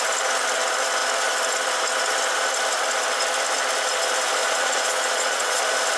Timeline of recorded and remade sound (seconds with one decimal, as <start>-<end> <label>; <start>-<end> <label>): 0.0-4.4 recorded; 4.4-5.6 remade; 5.6-6.0 recorded